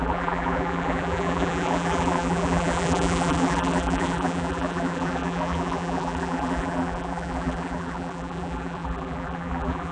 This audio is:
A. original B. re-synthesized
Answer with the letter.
B